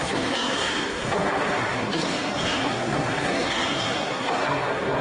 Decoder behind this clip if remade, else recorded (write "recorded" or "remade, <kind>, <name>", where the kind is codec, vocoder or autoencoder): remade, codec, SNAC